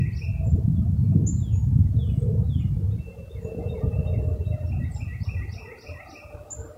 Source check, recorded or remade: recorded